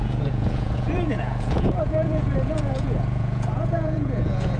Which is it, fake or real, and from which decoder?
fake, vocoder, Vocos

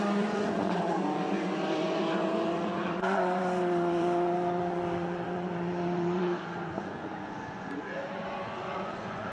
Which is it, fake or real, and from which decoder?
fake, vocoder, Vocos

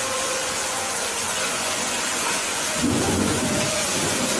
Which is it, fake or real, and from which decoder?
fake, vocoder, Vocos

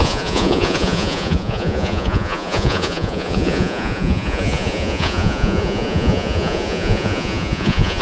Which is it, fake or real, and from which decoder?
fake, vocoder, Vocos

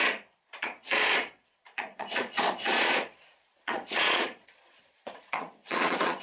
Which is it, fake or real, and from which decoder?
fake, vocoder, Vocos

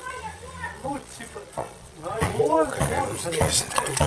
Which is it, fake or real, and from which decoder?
fake, vocoder, Vocos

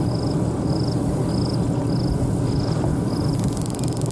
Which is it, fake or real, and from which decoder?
real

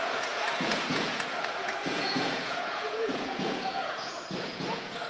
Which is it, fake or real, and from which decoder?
fake, vocoder, Vocos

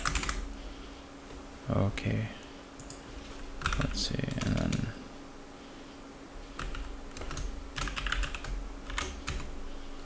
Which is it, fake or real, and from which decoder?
real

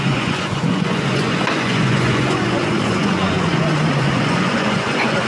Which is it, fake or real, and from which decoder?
fake, vocoder, Vocos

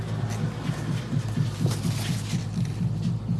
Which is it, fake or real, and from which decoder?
real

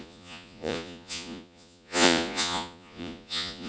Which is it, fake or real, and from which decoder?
fake, vocoder, Vocos